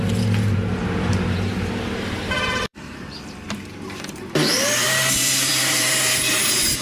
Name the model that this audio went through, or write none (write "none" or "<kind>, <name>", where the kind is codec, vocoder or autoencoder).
vocoder, BigVGAN v2